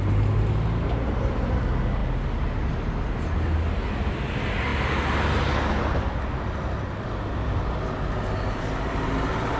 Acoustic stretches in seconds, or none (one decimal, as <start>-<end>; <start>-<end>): 0.0-9.6